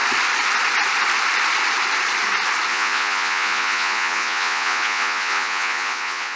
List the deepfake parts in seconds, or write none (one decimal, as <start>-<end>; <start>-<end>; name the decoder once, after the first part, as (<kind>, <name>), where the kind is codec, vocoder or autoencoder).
2.7-6.4 (vocoder, Vocos)